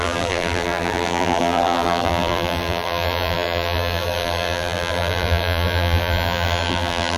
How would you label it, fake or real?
fake